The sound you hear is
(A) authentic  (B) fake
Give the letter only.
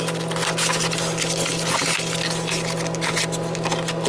A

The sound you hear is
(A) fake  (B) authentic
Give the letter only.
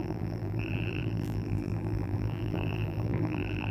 A